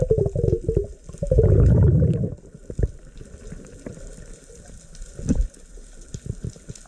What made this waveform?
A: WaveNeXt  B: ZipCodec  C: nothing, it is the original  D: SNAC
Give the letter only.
C